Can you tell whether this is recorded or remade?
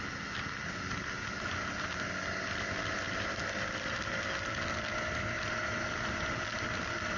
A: recorded